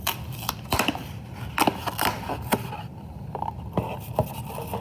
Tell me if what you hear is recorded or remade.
recorded